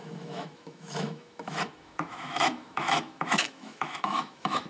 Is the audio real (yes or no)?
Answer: no